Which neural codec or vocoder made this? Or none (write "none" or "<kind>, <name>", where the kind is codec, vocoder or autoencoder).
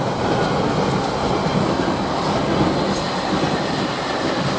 none